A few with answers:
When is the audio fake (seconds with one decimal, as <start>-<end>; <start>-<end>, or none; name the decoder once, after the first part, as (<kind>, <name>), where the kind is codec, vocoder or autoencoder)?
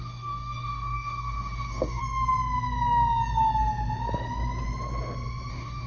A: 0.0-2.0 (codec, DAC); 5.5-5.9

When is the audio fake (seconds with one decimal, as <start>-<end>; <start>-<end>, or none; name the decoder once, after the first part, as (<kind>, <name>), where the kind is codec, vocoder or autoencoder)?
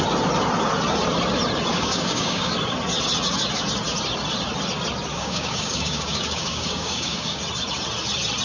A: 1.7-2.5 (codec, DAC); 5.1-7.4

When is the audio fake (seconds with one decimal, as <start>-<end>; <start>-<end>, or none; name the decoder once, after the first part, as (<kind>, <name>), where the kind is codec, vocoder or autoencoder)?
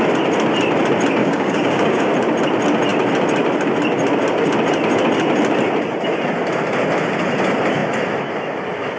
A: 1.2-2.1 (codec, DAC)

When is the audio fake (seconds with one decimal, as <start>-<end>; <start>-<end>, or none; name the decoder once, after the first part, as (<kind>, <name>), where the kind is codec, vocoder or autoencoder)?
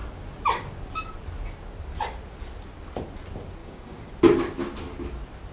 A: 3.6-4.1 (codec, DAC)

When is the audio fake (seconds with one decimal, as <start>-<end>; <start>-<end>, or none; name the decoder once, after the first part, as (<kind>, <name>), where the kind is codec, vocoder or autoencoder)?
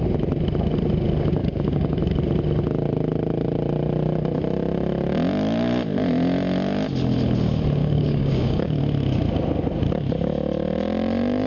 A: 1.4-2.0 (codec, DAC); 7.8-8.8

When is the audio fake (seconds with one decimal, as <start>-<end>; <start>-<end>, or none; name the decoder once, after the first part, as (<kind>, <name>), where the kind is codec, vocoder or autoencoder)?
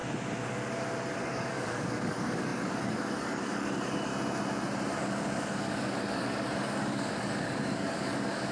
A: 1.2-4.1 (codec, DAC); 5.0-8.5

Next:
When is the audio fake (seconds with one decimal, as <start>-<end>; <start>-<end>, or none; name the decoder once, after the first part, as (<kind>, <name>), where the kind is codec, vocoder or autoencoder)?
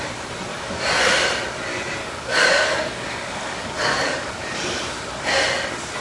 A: 0.5-1.1 (codec, DAC); 2.0-4.3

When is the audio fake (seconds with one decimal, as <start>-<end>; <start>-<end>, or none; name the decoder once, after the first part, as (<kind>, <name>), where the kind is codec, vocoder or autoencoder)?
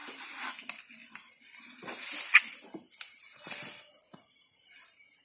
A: none